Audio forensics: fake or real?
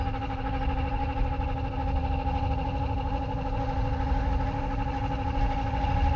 real